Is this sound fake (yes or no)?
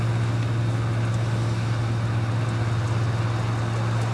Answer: no